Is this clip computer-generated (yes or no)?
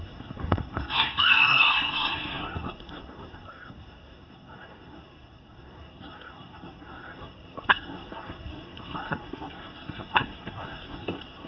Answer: yes